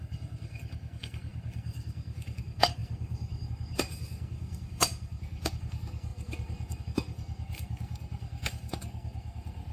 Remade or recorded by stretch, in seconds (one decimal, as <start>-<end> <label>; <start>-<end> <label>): 0.0-9.7 remade